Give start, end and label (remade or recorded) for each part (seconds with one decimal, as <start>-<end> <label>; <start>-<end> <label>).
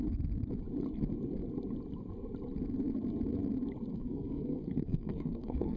0.0-3.9 recorded; 3.9-5.8 remade